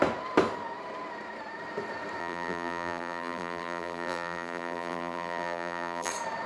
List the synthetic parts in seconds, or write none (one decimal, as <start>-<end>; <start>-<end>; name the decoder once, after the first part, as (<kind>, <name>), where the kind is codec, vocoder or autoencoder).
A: 2.2-6.1 (vocoder, BigVGAN v2)